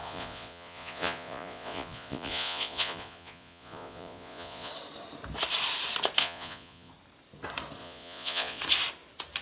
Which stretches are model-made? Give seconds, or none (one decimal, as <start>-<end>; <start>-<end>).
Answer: 0.0-4.7; 6.2-6.9; 7.8-8.6